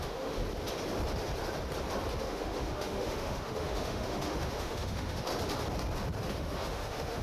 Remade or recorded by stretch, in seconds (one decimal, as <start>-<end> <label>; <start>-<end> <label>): 0.0-0.4 remade; 0.4-2.2 recorded; 2.2-5.3 remade; 5.3-6.3 recorded; 6.3-7.2 remade